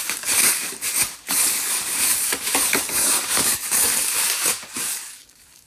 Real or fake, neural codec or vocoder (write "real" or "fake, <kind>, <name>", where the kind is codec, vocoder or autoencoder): fake, codec, DAC